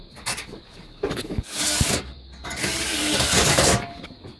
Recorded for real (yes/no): no